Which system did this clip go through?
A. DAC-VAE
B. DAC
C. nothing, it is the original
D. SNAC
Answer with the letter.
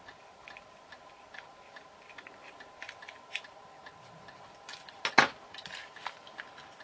C